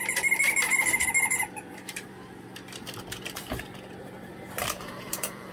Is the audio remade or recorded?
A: remade